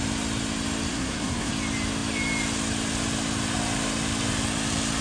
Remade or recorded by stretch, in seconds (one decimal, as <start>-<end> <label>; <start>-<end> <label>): 0.0-0.9 recorded; 0.9-1.5 remade; 1.5-5.0 recorded